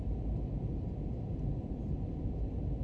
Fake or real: real